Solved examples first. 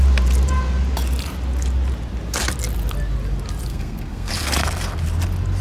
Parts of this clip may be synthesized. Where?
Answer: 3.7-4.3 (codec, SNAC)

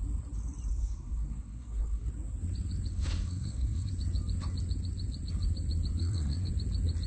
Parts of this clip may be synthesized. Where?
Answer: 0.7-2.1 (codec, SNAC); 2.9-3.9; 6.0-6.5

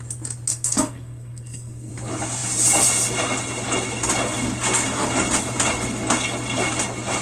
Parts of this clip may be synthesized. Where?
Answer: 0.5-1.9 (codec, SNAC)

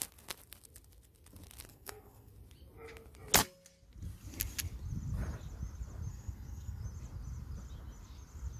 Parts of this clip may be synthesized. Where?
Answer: 1.7-2.3 (codec, SNAC); 6.1-6.8

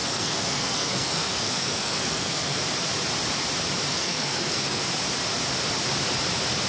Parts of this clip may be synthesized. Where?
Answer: 0.0-2.6 (codec, SNAC); 3.9-4.8

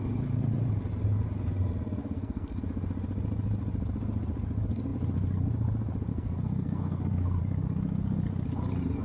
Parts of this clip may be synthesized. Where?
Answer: 2.0-2.6 (codec, SNAC); 6.1-7.4

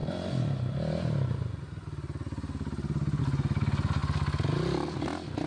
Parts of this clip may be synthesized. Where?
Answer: none